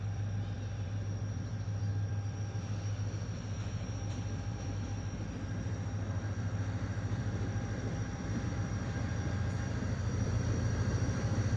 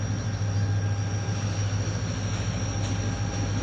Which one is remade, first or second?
first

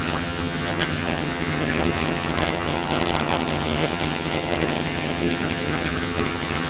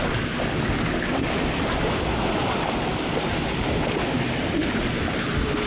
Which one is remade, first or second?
first